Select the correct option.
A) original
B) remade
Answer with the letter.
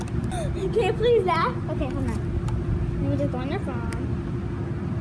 A